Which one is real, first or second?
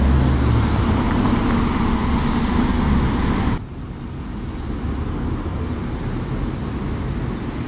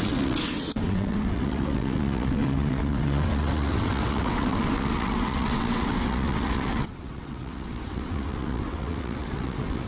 first